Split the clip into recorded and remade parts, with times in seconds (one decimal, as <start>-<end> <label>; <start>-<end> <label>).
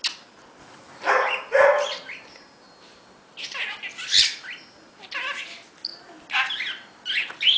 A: 0.0-0.6 recorded; 0.6-1.1 remade; 1.1-7.6 recorded